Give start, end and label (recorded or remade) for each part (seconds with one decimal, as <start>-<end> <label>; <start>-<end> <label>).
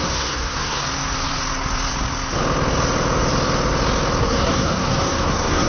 0.0-0.8 remade; 0.8-4.2 recorded; 4.2-5.7 remade